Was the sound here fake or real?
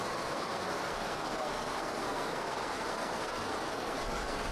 fake